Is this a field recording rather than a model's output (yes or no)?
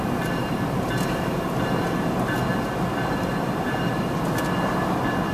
yes